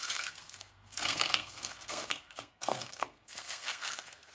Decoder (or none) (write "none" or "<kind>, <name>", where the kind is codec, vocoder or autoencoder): codec, SNAC